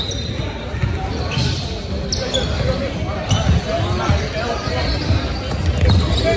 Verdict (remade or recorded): recorded